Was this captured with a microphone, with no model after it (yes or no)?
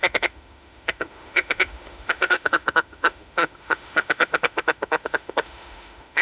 no